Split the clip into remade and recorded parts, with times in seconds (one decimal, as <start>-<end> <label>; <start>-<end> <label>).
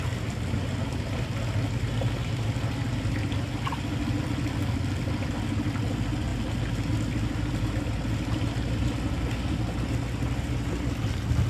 0.0-11.5 recorded